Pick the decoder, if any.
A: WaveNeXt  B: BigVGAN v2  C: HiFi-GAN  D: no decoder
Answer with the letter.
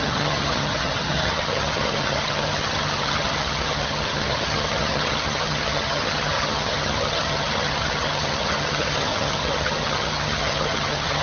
C